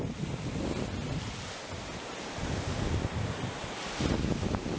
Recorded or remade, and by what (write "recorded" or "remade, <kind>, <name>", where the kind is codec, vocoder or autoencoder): recorded